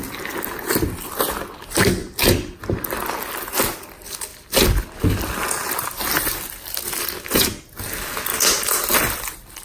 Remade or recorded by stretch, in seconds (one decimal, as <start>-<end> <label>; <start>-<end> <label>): 0.0-9.6 recorded